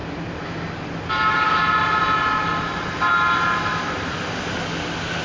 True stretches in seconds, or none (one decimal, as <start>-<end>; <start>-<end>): 0.0-5.2

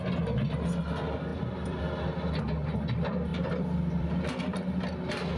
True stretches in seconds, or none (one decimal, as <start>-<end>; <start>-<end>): 0.0-1.3; 1.8-3.3; 4.8-5.4

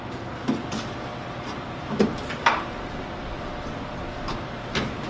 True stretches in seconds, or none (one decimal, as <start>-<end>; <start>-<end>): 0.0-5.1

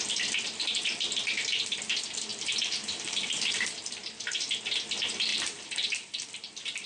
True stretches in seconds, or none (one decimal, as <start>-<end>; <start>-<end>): 0.0-2.3; 3.9-5.3

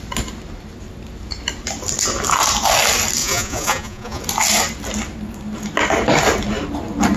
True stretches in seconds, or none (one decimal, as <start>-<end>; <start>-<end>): 0.0-3.2; 4.2-7.2

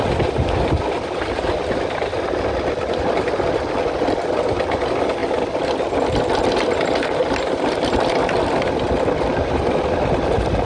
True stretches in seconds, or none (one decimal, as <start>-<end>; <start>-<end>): 0.0-10.7

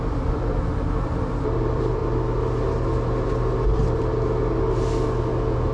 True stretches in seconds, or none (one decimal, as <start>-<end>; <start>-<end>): 2.0-5.7

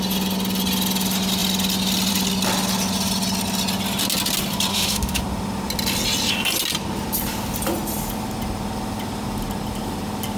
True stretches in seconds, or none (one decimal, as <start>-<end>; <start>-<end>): 0.0-4.7; 5.2-10.4